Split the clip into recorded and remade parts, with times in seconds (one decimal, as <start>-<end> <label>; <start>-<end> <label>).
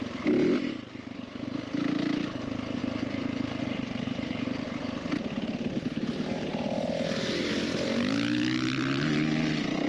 0.0-9.9 recorded